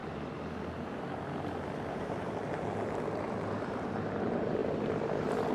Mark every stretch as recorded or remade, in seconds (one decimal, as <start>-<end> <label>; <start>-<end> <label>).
0.0-1.9 recorded; 1.9-2.4 remade; 2.4-3.2 recorded; 3.2-4.6 remade; 4.6-5.5 recorded